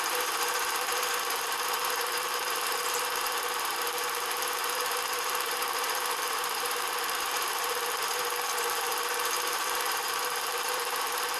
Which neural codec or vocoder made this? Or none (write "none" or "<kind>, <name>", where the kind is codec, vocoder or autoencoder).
vocoder, BigVGAN v2